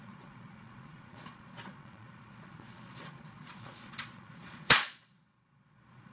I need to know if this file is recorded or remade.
remade